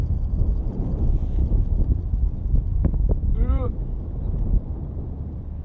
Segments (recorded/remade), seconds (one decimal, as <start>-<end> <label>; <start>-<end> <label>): 0.0-3.8 remade; 3.8-4.6 recorded; 4.6-5.6 remade